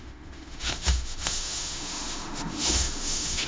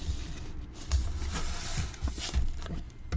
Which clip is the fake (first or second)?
first